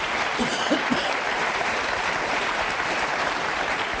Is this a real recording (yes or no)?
no